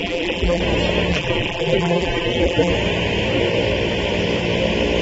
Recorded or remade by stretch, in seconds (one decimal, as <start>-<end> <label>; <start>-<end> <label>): 0.0-0.6 remade; 0.6-1.1 recorded; 1.1-2.7 remade; 2.7-5.0 recorded